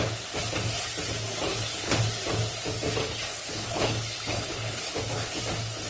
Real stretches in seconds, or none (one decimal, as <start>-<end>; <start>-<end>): 0.0-1.5; 2.0-3.0; 5.4-5.9